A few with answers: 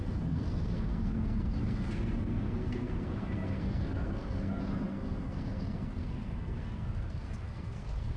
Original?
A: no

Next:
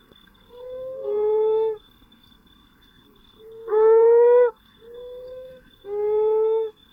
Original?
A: no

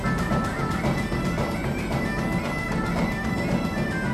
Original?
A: yes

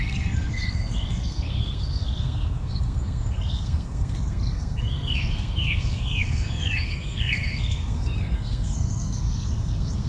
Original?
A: no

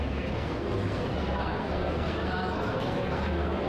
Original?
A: no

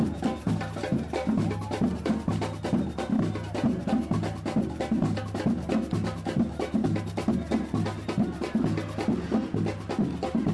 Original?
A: yes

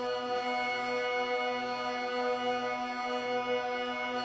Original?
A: yes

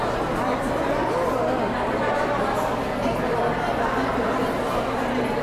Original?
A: yes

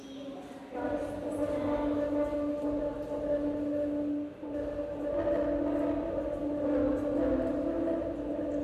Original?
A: yes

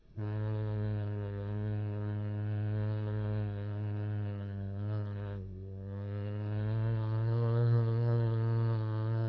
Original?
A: no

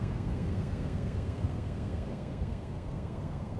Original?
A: no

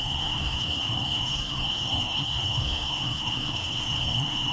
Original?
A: no